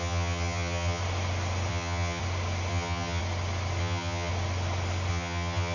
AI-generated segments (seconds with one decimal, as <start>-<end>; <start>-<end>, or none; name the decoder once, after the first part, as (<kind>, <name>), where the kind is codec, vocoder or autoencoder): 0.0-1.0 (vocoder, HiFi-GAN); 1.7-2.2; 2.7-3.2; 3.8-4.3; 5.1-5.7